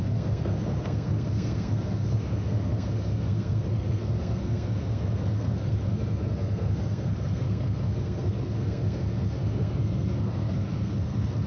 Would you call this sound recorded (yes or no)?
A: no